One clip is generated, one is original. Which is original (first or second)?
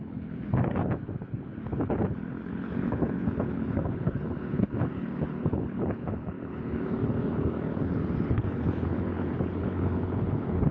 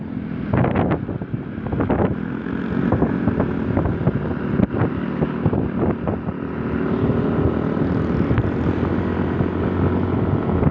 second